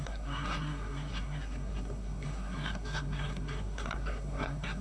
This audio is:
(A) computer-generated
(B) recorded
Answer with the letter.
A